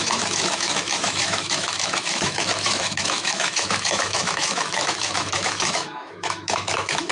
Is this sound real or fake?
fake